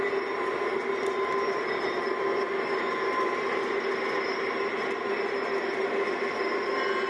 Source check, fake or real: fake